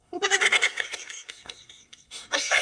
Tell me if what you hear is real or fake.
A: fake